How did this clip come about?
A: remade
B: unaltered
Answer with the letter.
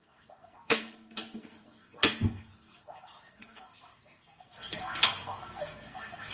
A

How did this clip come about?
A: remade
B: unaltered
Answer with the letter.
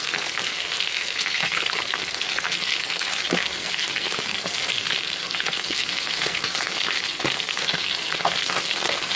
A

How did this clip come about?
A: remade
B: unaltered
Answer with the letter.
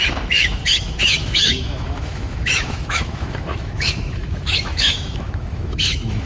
A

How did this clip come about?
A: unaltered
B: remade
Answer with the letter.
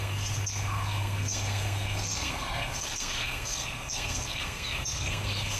B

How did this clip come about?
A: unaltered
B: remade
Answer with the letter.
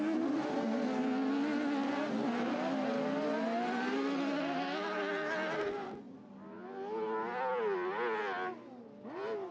A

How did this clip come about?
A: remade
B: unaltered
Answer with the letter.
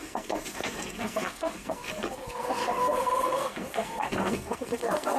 A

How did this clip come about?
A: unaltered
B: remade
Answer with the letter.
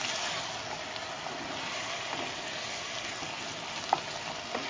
A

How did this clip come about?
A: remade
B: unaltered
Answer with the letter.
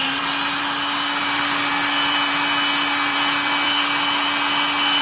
B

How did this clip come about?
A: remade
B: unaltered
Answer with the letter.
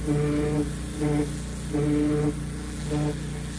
B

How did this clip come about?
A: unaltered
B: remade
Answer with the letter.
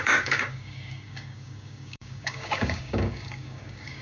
B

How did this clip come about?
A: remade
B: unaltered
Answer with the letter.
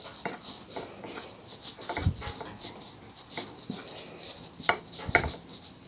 B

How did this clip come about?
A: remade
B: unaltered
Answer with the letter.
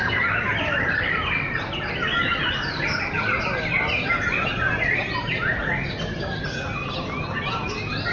B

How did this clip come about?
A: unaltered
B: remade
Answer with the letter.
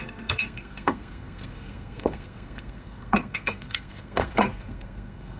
B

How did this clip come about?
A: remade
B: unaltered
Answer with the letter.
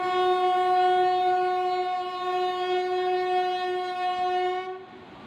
B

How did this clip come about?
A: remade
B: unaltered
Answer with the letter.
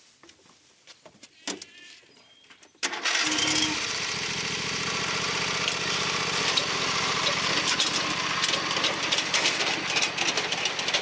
B